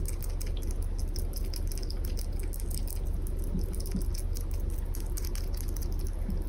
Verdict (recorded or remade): recorded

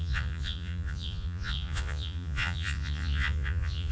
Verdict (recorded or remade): remade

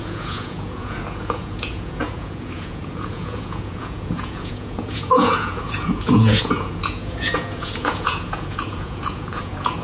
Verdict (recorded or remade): remade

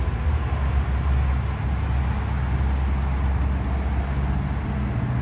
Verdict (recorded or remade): recorded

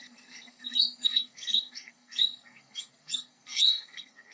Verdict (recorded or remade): remade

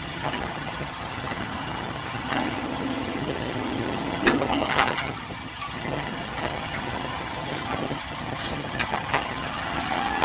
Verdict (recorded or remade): remade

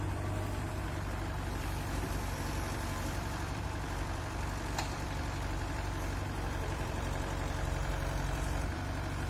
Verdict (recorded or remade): remade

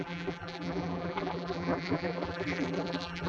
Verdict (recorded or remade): remade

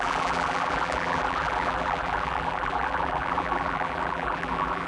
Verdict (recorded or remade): remade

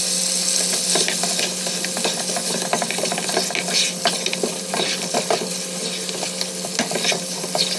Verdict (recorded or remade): recorded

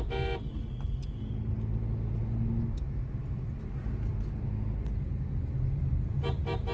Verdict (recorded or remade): recorded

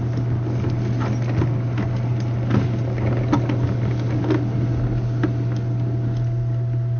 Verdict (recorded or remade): recorded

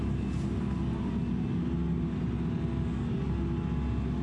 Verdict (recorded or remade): recorded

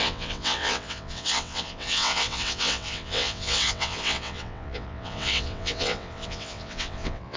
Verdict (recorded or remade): remade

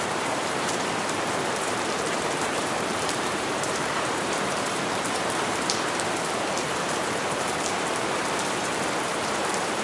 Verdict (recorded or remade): remade